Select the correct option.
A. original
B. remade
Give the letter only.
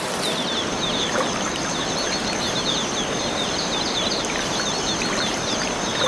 A